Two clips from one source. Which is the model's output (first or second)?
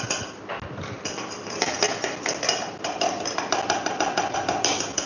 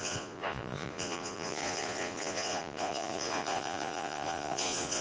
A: second